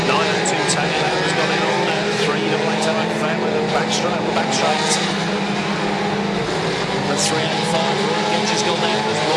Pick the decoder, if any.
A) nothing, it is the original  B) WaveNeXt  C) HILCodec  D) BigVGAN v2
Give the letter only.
A